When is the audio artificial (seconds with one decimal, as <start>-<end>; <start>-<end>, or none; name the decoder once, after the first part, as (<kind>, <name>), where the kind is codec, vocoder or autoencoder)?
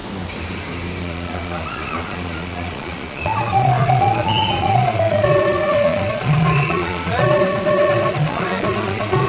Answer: 1.0-9.3 (vocoder, Vocos)